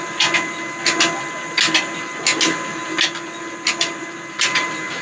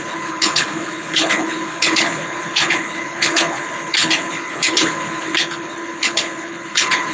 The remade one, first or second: second